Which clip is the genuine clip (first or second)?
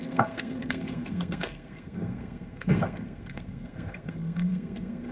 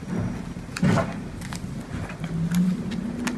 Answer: second